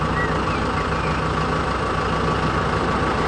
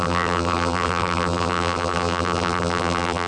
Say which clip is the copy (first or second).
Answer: second